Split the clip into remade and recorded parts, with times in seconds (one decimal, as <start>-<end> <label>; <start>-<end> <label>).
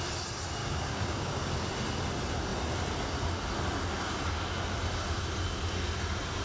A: 0.0-0.6 recorded; 0.6-1.5 remade; 1.5-6.4 recorded